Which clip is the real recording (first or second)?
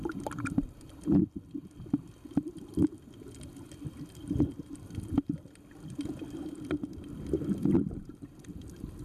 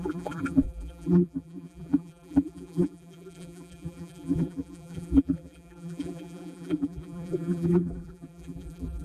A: first